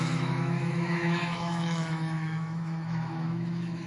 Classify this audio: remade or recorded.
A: remade